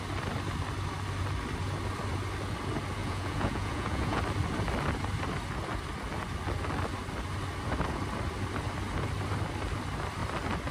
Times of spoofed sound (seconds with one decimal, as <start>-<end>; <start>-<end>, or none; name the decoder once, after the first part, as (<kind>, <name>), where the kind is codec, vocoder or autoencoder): 3.0-4.2 (vocoder, Vocos)